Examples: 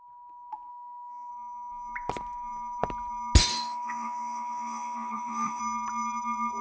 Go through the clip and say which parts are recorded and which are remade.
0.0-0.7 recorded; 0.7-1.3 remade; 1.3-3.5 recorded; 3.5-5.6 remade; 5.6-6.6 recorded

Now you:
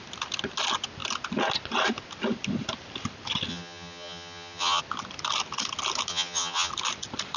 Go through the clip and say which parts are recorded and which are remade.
0.0-3.5 recorded; 3.5-4.8 remade; 4.8-6.1 recorded; 6.1-6.7 remade; 6.7-7.4 recorded

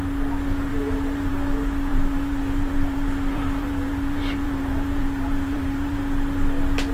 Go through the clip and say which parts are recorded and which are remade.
0.0-0.7 recorded; 0.7-1.3 remade; 1.3-1.9 recorded; 1.9-6.0 remade; 6.0-6.9 recorded

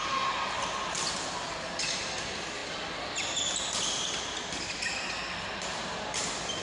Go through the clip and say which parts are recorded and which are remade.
0.0-6.6 recorded

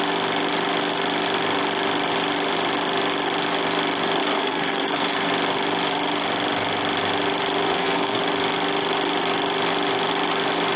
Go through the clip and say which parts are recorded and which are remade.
0.0-4.2 recorded; 4.2-5.3 remade; 5.3-7.7 recorded; 7.7-8.2 remade; 8.2-10.8 recorded

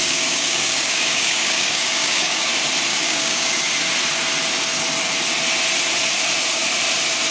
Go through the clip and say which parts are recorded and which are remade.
0.0-2.5 remade; 2.5-2.9 recorded; 2.9-3.5 remade; 3.5-7.3 recorded